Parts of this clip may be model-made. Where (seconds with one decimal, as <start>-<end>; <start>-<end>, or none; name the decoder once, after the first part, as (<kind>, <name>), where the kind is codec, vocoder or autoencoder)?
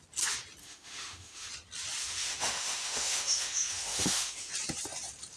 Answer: 0.6-1.5 (autoencoder, DAC-VAE); 2.0-4.5